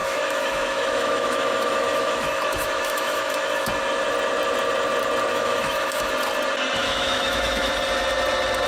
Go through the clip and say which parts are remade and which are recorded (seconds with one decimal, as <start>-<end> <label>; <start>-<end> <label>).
0.0-3.7 remade; 3.7-5.3 recorded; 5.3-6.1 remade; 6.1-6.8 recorded; 6.8-7.7 remade; 7.7-8.7 recorded